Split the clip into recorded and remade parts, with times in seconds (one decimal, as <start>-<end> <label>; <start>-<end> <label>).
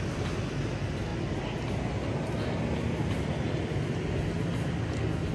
0.0-5.3 recorded